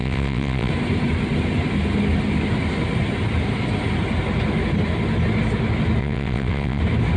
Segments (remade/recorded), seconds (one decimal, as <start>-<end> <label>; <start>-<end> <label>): 0.0-0.7 remade; 0.7-6.0 recorded; 6.0-6.8 remade; 6.8-7.2 recorded